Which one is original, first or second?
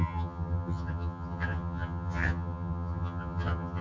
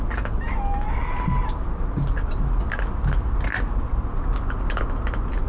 second